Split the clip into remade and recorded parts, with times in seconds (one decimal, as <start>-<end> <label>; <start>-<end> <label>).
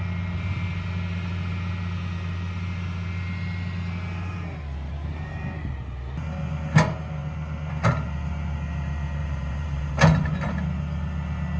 0.0-9.2 recorded; 9.2-9.9 remade; 9.9-11.6 recorded